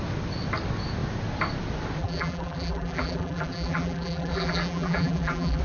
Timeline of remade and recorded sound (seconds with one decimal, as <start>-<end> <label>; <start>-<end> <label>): 0.0-2.0 recorded; 2.0-5.6 remade